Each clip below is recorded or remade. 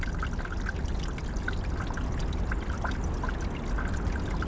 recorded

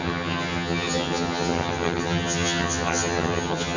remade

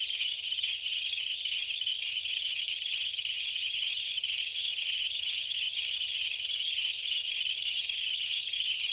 remade